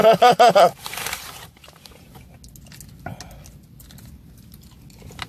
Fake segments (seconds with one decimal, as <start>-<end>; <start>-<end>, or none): 0.0-2.2